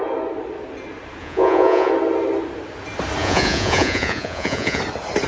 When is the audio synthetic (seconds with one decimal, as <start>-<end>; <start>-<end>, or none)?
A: 1.2-1.9; 3.2-4.8